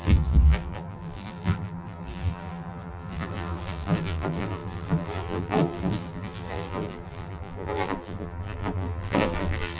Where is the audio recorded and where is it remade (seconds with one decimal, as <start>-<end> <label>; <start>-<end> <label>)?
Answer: 0.0-9.8 remade

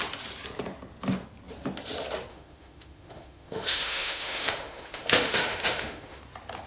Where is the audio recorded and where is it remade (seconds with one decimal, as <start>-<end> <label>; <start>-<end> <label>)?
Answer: 0.0-2.3 recorded; 2.3-6.2 remade; 6.2-6.7 recorded